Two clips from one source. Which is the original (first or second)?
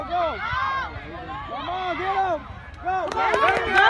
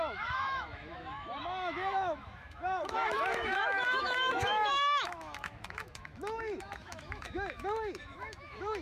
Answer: first